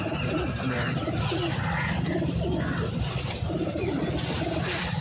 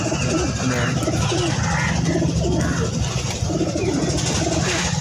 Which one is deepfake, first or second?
first